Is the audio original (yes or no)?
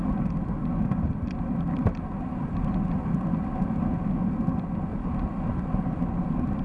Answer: yes